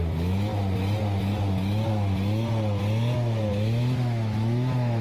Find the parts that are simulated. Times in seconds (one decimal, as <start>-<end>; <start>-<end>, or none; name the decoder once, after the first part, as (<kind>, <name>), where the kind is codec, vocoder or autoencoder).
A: 0.0-0.5 (autoencoder, DAC-VAE); 3.5-5.0